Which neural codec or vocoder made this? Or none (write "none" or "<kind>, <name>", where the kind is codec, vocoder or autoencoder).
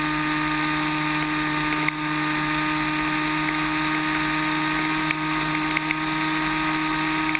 none